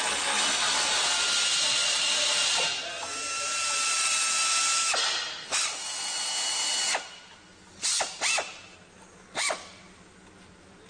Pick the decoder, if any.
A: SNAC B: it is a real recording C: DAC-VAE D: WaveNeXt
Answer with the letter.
B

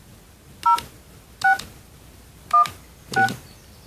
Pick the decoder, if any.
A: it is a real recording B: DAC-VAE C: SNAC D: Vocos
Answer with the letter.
A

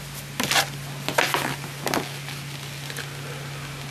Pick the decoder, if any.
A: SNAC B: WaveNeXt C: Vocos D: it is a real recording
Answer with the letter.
D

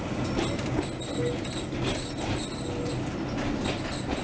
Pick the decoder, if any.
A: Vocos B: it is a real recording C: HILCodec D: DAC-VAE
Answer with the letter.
B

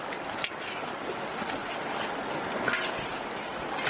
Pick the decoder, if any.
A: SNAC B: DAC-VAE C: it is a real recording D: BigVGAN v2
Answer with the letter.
C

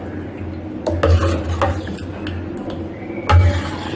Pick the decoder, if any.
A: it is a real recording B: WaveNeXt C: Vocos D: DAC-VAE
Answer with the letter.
A